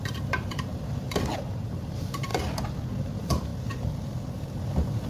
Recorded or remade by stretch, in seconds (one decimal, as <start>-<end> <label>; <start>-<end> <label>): 0.0-2.3 remade; 2.3-3.0 recorded; 3.0-3.5 remade; 3.5-5.1 recorded